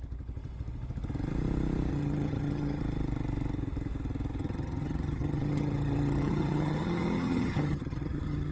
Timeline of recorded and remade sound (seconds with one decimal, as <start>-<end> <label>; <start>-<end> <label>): 0.0-1.9 recorded; 1.9-2.8 remade; 2.8-4.4 recorded; 4.4-8.5 remade